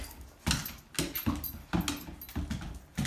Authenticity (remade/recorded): recorded